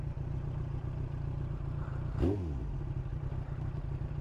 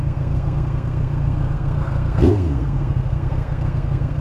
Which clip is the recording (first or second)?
first